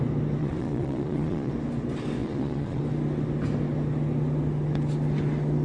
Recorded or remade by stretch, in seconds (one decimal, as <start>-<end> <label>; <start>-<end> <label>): 0.0-0.4 recorded; 0.4-1.5 remade; 1.5-2.2 recorded; 2.2-2.8 remade; 2.8-5.6 recorded